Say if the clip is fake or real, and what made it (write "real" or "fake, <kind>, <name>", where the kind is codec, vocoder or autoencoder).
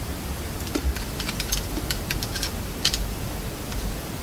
fake, vocoder, BigVGAN v2